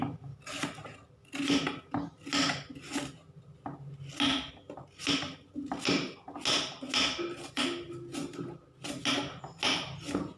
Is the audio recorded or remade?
recorded